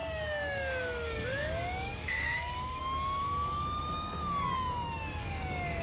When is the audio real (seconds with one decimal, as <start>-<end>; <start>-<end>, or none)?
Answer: none